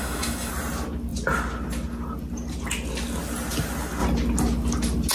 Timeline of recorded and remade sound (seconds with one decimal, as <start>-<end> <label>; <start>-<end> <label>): 0.0-0.5 remade; 0.5-5.1 recorded